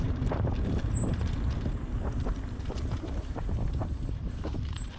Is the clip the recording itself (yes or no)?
no